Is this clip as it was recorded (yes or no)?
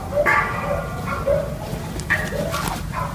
yes